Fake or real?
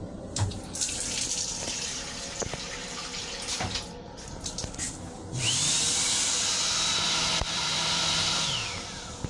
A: fake